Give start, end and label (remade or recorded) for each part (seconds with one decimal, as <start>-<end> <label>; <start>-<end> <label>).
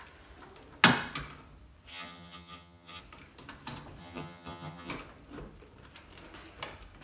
0.0-1.9 recorded; 1.9-3.0 remade; 3.0-4.0 recorded; 4.0-4.9 remade; 4.9-7.0 recorded